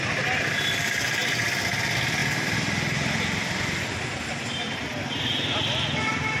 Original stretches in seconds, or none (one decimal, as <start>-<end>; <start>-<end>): 0.0-1.2; 1.8-6.4

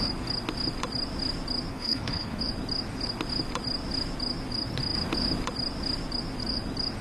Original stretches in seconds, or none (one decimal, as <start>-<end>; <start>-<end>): 0.0-1.7; 2.4-7.0

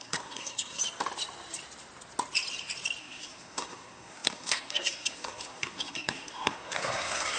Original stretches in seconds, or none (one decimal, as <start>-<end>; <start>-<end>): 0.8-3.0

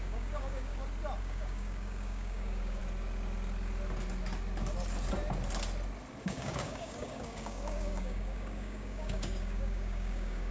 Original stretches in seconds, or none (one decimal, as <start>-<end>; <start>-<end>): 0.7-1.2; 2.8-6.2

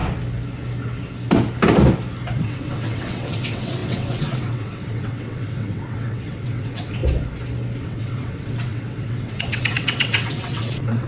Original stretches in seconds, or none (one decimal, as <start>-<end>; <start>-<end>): 0.0-2.4; 7.0-7.8